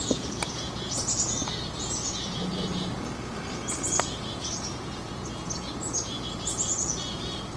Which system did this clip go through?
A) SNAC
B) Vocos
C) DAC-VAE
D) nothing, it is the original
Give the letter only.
B